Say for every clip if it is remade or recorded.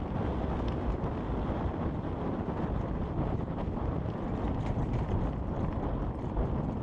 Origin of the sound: remade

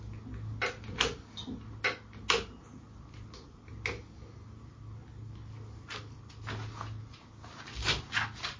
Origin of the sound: recorded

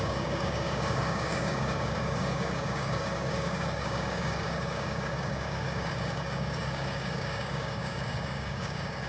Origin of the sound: remade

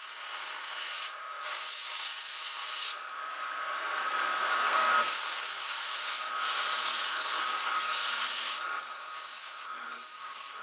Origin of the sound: remade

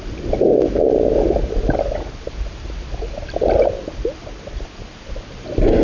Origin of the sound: recorded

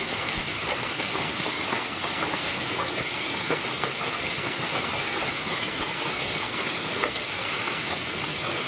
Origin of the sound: remade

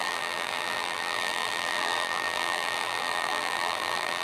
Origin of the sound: remade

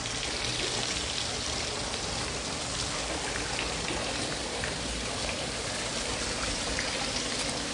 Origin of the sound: recorded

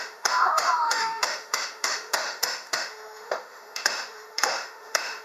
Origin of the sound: remade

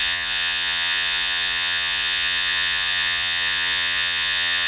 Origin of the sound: remade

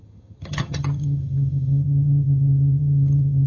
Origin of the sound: remade